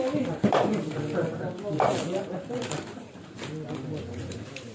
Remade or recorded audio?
remade